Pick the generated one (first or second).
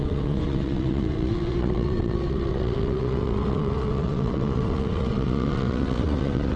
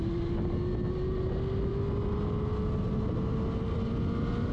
first